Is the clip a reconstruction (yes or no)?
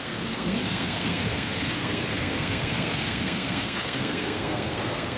yes